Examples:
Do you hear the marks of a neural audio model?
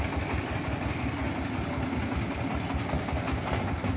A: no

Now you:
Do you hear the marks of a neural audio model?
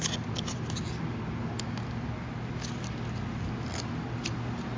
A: no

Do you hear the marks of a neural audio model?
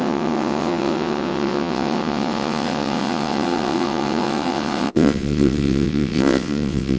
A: yes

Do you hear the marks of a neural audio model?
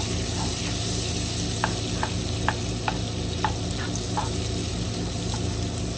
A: no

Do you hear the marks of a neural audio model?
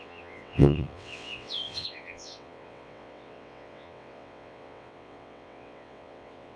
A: yes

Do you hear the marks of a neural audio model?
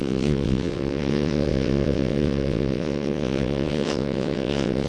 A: yes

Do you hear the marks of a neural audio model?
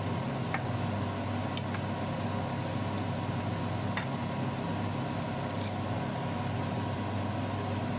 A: no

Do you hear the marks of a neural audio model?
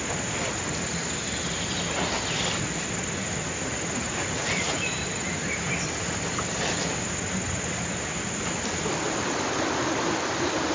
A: no